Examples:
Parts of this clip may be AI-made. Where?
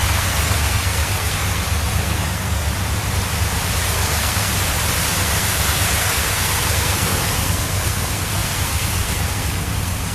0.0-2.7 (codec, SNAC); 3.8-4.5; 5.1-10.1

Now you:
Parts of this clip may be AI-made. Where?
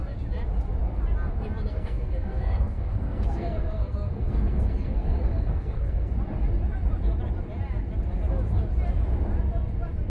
1.7-6.1 (codec, SNAC)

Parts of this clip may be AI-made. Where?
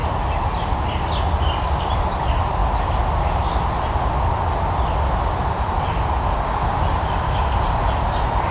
none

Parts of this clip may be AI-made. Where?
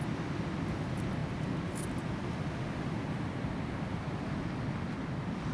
none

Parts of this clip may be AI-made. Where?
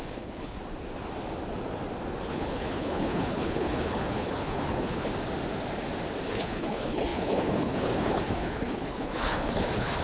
0.0-0.6 (codec, HILCodec); 2.3-5.1; 6.3-10.0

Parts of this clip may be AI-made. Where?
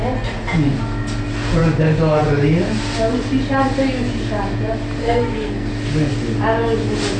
5.0-5.7 (codec, SNAC)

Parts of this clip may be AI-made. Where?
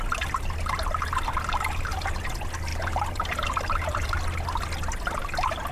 2.7-4.1 (vocoder, BigVGAN v2)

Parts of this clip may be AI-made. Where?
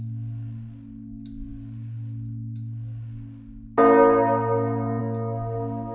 none